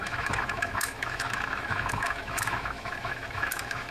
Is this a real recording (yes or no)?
no